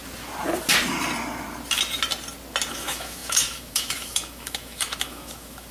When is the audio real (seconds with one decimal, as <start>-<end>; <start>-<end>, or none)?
0.0-2.7